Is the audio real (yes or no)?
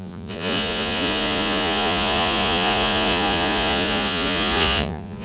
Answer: no